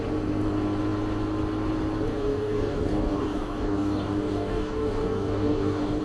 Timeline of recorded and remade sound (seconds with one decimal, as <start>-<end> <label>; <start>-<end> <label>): 0.0-2.1 recorded; 2.1-6.0 remade